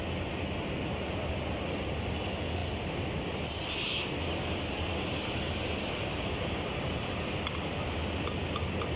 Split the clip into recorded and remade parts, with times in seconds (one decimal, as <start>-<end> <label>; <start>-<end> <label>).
0.0-9.0 recorded

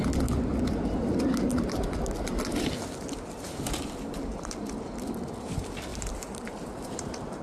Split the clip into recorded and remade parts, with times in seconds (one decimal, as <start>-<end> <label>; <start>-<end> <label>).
0.0-5.9 recorded; 5.9-7.4 remade